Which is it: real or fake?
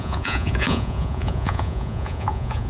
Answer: fake